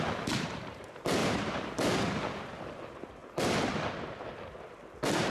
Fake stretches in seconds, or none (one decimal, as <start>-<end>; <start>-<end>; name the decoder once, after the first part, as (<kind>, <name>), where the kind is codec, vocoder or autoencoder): 1.2-1.7 (vocoder, BigVGAN v2)